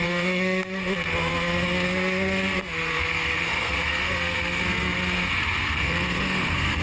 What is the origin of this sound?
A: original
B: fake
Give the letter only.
B